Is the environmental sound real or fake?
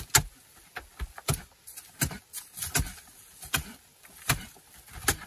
real